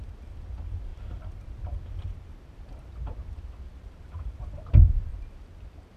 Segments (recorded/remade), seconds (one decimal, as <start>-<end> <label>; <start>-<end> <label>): 0.0-5.1 remade; 5.1-6.0 recorded